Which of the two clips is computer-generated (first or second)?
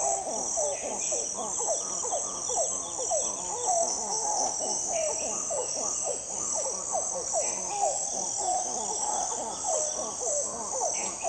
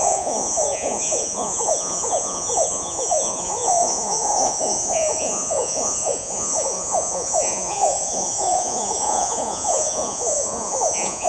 second